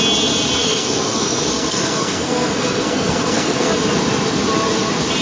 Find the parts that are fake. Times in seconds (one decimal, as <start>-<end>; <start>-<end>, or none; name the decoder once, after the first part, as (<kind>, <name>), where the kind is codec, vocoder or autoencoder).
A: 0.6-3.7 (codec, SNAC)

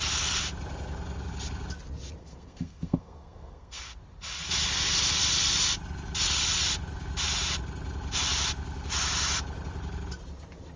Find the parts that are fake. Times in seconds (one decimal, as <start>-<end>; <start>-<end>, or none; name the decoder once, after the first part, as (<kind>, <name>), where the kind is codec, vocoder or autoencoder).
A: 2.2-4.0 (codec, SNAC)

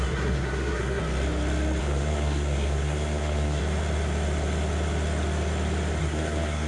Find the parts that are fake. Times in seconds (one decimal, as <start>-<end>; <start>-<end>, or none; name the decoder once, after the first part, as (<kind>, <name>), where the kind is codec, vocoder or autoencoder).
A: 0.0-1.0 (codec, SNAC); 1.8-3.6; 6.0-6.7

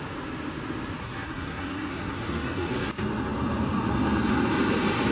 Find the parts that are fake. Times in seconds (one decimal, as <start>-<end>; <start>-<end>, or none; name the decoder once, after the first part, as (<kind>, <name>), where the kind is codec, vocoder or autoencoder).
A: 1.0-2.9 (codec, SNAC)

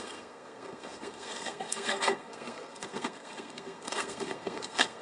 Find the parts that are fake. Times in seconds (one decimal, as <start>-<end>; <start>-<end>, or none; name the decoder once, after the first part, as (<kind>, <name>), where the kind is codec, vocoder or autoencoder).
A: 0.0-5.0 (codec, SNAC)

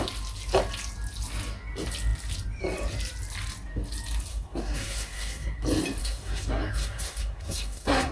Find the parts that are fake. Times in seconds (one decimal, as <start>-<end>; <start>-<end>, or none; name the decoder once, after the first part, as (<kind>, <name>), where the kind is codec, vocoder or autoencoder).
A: 4.3-5.6 (codec, SNAC); 6.0-8.1

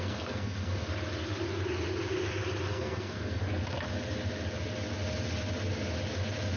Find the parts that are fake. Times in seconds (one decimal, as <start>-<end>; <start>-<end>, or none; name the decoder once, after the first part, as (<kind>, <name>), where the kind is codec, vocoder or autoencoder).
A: 0.0-0.9 (codec, SNAC); 2.7-3.4

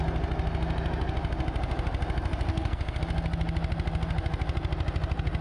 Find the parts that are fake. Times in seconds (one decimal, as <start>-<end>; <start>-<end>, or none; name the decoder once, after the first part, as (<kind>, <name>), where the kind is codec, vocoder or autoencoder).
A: 2.5-3.0 (codec, SNAC)